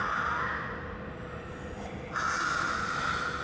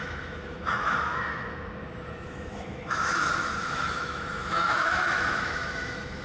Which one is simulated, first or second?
second